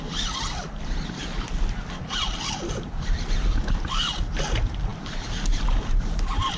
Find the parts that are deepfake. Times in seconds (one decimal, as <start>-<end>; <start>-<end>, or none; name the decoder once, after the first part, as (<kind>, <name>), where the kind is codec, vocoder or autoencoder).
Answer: none